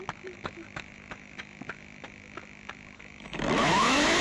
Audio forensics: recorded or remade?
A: remade